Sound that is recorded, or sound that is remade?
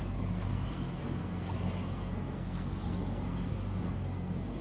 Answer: remade